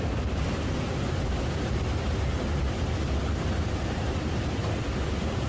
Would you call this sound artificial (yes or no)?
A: no